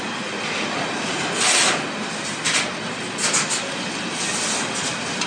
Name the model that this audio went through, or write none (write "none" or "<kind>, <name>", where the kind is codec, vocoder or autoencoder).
none